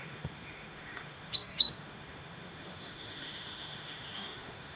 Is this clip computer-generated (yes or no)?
yes